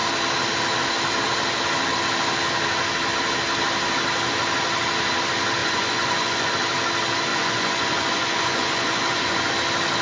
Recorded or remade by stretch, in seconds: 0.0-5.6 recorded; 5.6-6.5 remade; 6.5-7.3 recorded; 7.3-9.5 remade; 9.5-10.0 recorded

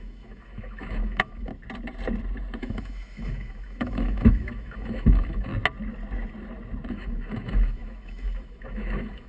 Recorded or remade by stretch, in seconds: 0.0-1.5 remade; 1.5-2.6 recorded; 2.6-5.5 remade; 5.5-6.9 recorded; 6.9-9.3 remade

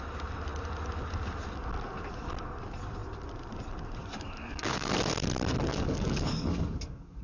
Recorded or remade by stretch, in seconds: 0.0-4.0 recorded; 4.0-4.9 remade; 4.9-5.7 recorded; 5.7-7.2 remade

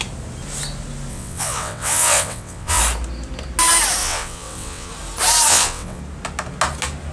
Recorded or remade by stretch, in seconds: 0.0-1.1 recorded; 1.1-2.8 remade; 2.8-4.0 recorded; 4.0-4.9 remade; 4.9-5.5 recorded; 5.5-6.0 remade; 6.0-7.1 recorded

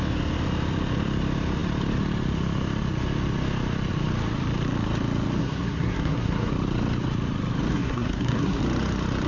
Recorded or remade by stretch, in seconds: 0.0-5.4 recorded; 5.4-6.5 remade; 6.5-7.7 recorded; 7.7-8.6 remade; 8.6-9.3 recorded

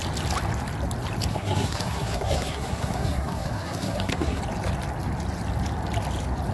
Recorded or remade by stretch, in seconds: 0.0-1.3 recorded; 1.3-4.4 remade; 4.4-6.5 recorded

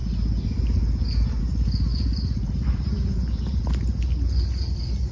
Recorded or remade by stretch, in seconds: 0.0-1.9 recorded; 1.9-3.6 remade; 3.6-5.1 recorded